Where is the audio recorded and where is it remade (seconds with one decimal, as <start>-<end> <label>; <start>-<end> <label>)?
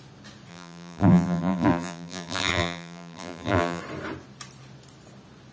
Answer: 0.0-0.5 recorded; 0.5-3.8 remade; 3.8-5.5 recorded